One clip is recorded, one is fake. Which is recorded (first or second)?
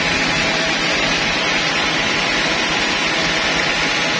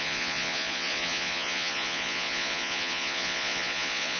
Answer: first